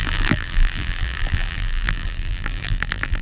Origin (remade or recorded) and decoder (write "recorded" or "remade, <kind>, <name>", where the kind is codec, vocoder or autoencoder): remade, vocoder, BigVGAN v2